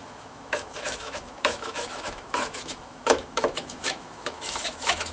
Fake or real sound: fake